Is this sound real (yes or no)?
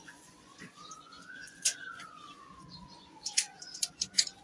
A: no